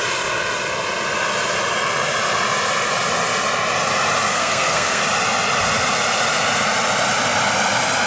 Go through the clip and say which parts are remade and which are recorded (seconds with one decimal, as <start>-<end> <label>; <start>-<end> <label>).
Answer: 0.0-4.3 recorded; 4.3-5.0 remade; 5.0-8.1 recorded